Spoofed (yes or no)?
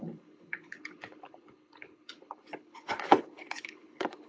yes